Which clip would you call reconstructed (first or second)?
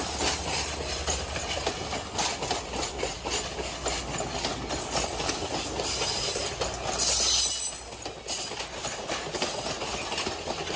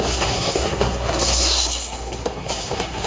second